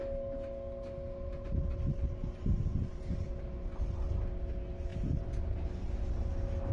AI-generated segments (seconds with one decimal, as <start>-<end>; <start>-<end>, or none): none